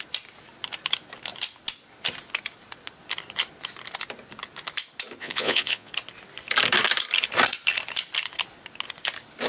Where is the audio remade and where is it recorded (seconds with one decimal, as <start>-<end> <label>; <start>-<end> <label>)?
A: 0.0-5.2 recorded; 5.2-5.9 remade; 5.9-9.5 recorded